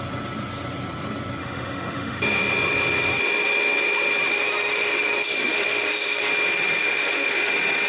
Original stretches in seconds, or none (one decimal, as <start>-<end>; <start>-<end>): 0.0-1.4; 2.2-4.3; 6.3-6.8; 7.5-7.9